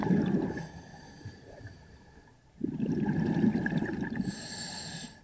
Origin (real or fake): real